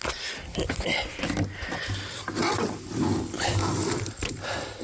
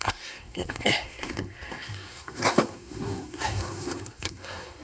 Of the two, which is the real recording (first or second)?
first